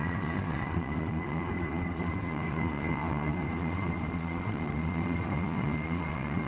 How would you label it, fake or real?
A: fake